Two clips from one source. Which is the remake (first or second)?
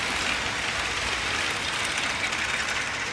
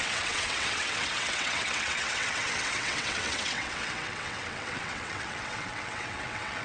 second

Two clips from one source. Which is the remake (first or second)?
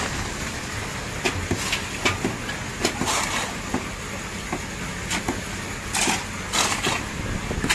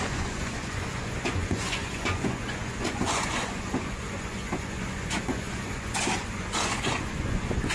second